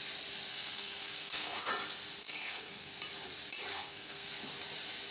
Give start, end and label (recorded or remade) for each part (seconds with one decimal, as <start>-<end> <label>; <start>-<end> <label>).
0.0-0.5 recorded; 0.5-1.7 remade; 1.7-2.2 recorded; 2.2-2.9 remade; 2.9-3.7 recorded; 3.7-4.3 remade; 4.3-5.1 recorded